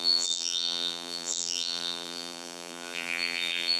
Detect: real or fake fake